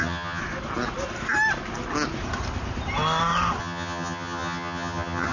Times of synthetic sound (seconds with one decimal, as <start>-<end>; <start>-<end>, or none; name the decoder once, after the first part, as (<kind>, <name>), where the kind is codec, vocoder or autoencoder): 0.0-0.4 (vocoder, HiFi-GAN); 3.6-5.3